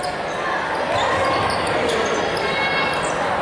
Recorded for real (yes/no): yes